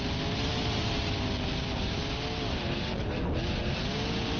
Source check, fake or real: real